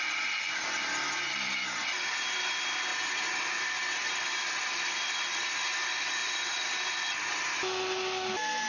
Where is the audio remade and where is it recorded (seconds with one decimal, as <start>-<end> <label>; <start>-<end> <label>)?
0.0-8.7 recorded